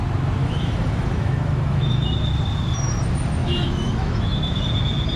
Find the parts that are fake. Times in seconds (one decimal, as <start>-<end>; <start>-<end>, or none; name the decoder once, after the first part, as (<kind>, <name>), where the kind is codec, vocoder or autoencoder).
0.4-2.1 (autoencoder, DAC-VAE); 3.4-4.6